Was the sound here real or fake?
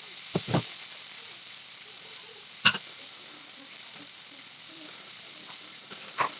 fake